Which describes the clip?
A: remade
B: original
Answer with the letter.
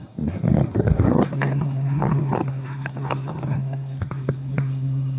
A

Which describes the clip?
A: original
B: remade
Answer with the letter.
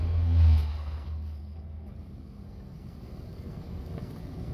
B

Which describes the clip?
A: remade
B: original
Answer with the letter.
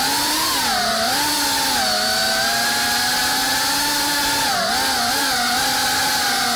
B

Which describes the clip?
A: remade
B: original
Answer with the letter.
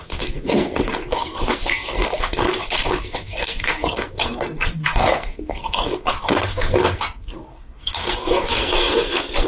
A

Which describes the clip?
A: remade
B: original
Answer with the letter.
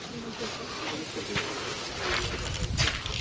B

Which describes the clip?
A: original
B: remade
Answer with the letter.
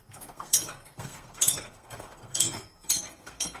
B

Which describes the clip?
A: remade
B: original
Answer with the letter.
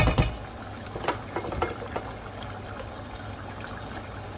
B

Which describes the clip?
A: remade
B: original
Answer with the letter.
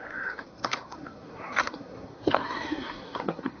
A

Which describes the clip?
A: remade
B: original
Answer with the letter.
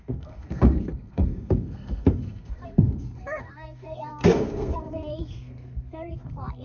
A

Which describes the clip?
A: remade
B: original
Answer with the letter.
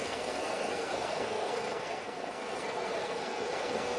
A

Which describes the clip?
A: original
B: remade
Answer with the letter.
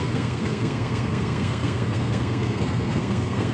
B